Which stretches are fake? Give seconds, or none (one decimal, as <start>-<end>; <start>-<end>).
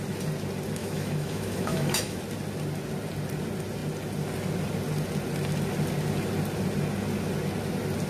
0.8-2.2